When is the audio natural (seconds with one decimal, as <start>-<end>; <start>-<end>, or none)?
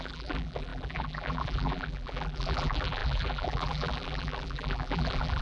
none